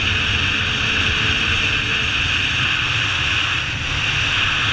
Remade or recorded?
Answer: recorded